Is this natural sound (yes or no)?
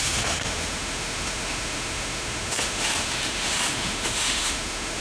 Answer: no